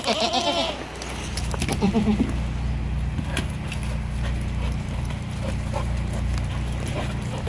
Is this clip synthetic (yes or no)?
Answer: no